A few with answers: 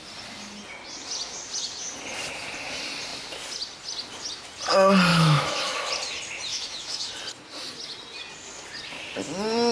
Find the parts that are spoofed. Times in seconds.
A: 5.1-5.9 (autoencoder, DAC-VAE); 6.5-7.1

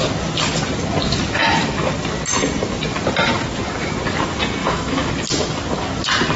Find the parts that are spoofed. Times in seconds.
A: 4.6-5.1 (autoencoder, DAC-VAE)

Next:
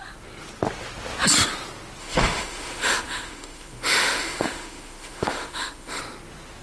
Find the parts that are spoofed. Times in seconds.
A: 2.0-6.0 (autoencoder, DAC-VAE)

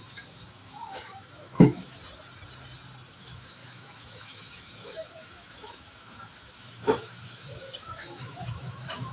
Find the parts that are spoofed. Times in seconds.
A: 0.0-2.0 (autoencoder, DAC-VAE); 3.1-9.1

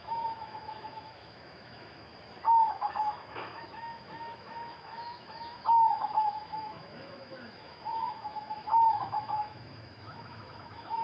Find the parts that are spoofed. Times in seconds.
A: 0.0-2.1 (autoencoder, DAC-VAE); 2.7-11.0

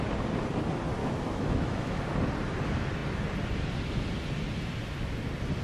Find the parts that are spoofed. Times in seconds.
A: 1.0-2.0 (autoencoder, DAC-VAE)

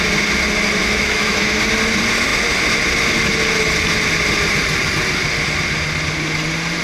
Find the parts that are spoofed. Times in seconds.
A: 0.8-1.6 (autoencoder, DAC-VAE)

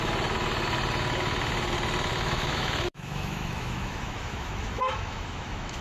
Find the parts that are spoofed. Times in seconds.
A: 2.1-5.8 (autoencoder, DAC-VAE)